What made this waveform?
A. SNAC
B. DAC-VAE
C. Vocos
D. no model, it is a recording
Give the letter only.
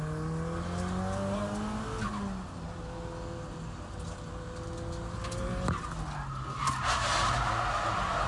D